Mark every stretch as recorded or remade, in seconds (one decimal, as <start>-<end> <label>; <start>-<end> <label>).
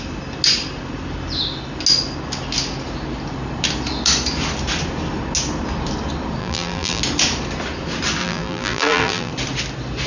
0.0-6.4 recorded; 6.4-7.0 remade; 7.0-8.2 recorded; 8.2-9.3 remade; 9.3-10.1 recorded